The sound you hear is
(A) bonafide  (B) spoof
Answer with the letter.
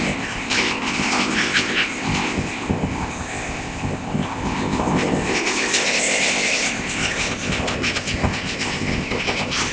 B